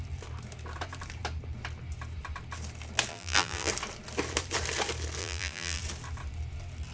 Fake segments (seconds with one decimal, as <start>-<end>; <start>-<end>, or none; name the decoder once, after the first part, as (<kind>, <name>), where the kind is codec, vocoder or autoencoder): 3.1-3.7 (vocoder, BigVGAN v2); 5.2-5.8